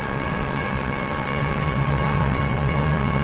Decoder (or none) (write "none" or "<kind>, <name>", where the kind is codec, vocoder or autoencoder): vocoder, WaveNeXt